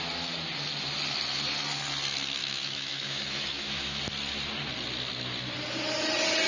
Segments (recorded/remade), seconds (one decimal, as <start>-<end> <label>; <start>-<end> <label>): 0.0-2.4 recorded; 2.4-4.0 remade; 4.0-6.5 recorded